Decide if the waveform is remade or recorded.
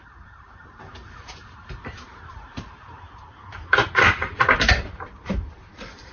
remade